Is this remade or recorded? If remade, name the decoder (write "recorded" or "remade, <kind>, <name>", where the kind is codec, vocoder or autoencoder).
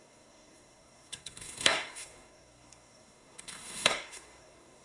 remade, codec, SNAC